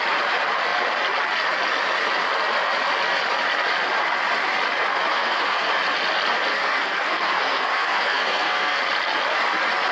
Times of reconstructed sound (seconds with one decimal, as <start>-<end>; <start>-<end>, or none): 5.1-5.7; 6.5-8.8